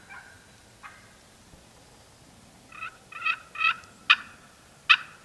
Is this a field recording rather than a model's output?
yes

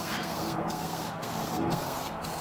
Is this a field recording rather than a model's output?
no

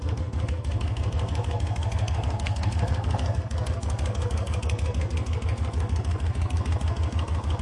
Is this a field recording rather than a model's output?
no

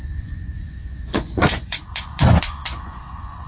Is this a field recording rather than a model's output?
no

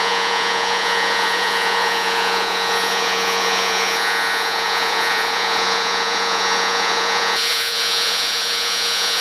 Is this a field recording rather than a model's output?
no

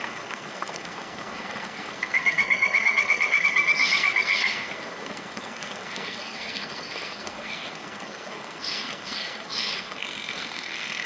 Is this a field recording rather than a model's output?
no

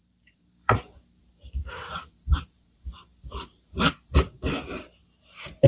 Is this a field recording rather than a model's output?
no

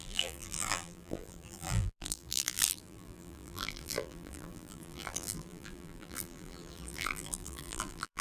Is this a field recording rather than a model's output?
no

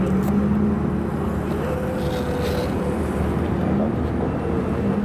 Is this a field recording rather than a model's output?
yes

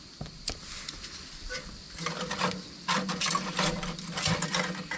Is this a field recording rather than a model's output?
no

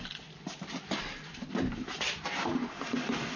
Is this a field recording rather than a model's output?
yes